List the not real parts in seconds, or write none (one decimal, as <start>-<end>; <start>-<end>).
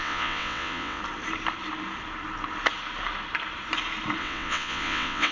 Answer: 0.0-1.0; 4.2-5.3